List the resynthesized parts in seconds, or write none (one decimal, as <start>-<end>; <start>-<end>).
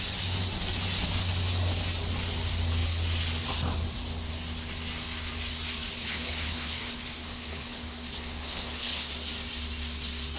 6.0-9.1